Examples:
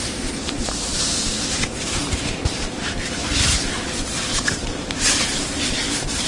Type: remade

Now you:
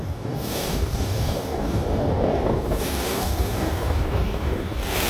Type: remade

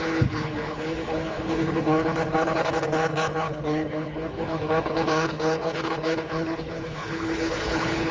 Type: remade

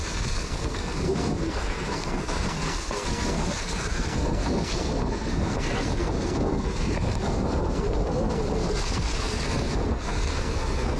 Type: remade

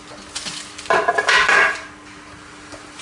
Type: recorded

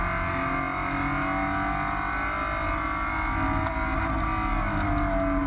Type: recorded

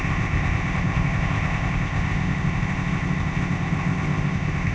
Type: remade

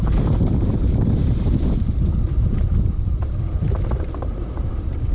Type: remade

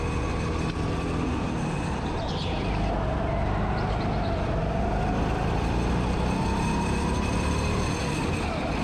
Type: recorded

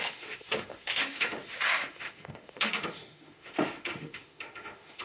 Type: remade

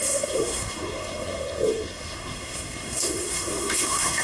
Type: remade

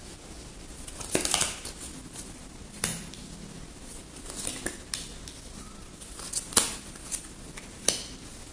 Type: recorded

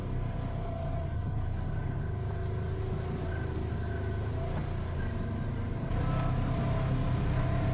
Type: recorded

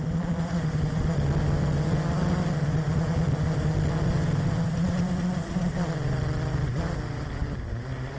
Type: recorded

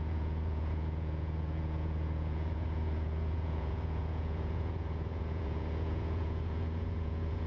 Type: remade